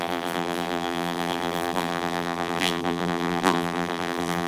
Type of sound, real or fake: fake